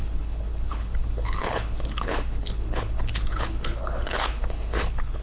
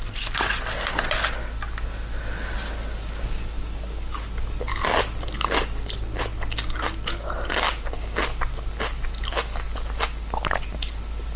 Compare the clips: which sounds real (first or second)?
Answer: second